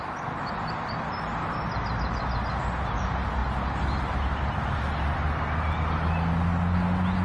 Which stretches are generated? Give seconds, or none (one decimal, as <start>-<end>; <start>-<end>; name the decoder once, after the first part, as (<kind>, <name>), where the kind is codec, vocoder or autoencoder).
none

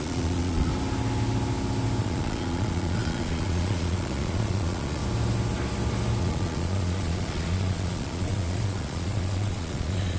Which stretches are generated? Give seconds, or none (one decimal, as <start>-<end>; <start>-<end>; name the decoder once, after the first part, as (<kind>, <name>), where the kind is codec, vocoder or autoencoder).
0.0-0.7 (vocoder, Vocos); 2.0-5.0; 6.2-10.2

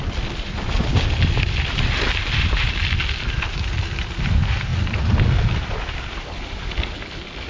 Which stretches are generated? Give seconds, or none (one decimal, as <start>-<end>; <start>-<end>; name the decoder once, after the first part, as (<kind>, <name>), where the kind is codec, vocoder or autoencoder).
none

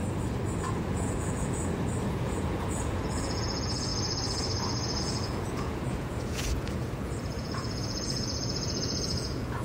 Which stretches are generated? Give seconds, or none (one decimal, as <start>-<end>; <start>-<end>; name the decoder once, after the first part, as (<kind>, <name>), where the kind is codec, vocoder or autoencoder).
0.7-1.6 (vocoder, Vocos); 2.1-3.9; 5.0-9.6

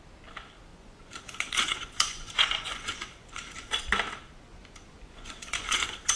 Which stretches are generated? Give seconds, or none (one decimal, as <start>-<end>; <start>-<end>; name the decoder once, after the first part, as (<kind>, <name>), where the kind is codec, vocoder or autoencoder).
0.7-3.8 (vocoder, Vocos); 4.5-6.2